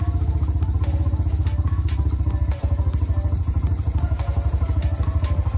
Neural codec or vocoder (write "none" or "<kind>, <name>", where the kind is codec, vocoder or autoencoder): none